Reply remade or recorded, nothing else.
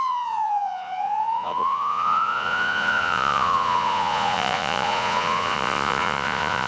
remade